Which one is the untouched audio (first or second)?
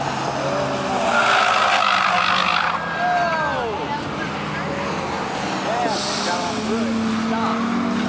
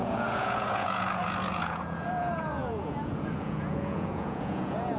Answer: first